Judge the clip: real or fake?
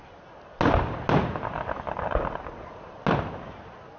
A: real